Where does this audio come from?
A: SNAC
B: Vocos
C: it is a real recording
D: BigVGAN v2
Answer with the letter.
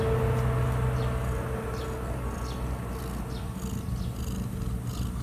C